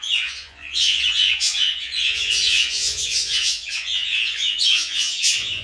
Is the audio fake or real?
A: fake